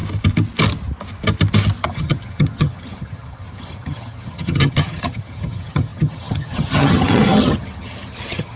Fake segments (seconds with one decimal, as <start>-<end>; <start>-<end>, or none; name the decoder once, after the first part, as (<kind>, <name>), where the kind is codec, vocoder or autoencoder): 1.8-8.6 (vocoder, HiFi-GAN)